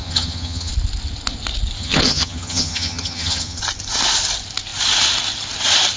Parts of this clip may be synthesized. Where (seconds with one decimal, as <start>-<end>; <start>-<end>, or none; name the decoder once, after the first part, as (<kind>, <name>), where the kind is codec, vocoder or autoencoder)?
0.0-0.7 (vocoder, HiFi-GAN); 1.8-3.6